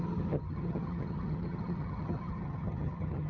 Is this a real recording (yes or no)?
no